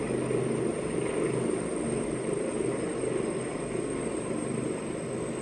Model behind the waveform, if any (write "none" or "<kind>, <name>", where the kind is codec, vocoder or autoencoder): none